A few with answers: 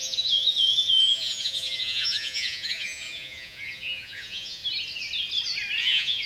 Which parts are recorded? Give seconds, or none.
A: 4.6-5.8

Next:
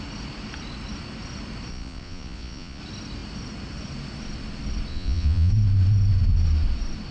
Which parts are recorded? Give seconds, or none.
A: 0.0-1.7; 2.8-4.9; 5.5-7.1

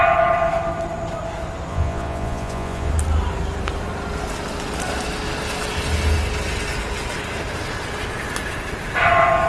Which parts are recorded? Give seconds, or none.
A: 0.0-1.7; 2.9-9.5

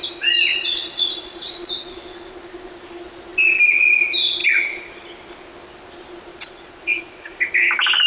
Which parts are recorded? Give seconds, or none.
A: 0.0-0.5; 1.7-6.3; 7.4-8.1

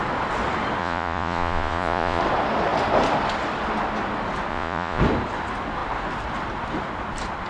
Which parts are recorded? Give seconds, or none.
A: 0.0-0.8; 2.2-4.5; 5.0-7.5

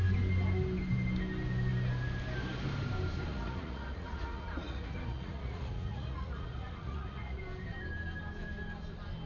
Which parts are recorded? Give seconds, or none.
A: 0.0-3.3; 7.4-9.3